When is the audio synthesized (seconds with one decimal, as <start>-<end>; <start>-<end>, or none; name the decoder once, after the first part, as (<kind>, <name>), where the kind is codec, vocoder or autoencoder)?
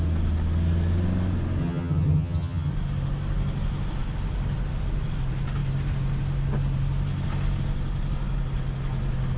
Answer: 1.6-2.7 (vocoder, HiFi-GAN)